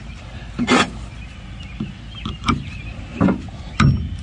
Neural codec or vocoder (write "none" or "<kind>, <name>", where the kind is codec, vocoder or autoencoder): none